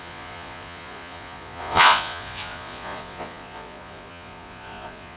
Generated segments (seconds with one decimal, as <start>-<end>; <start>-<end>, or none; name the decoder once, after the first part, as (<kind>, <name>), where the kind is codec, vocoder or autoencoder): 0.0-5.2 (vocoder, Vocos)